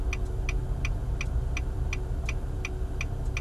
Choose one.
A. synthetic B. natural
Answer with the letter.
B